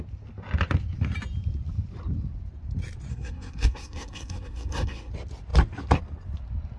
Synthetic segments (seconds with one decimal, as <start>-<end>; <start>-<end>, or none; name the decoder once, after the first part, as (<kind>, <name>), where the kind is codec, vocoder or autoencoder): 3.1-5.1 (codec, SNAC)